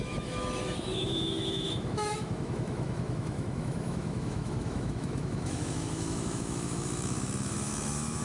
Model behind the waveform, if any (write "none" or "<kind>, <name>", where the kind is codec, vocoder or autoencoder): autoencoder, DAC-VAE